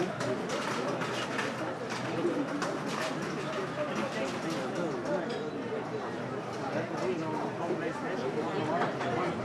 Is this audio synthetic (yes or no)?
no